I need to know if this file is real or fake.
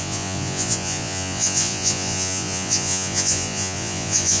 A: fake